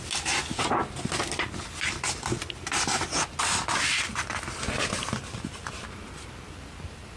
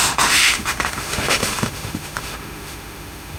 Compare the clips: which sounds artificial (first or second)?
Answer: second